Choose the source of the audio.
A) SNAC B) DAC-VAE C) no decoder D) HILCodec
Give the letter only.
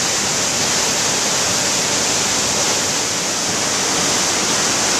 C